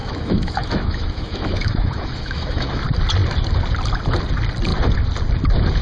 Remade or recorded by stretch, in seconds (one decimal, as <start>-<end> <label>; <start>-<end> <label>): 0.0-2.8 remade; 2.8-5.8 recorded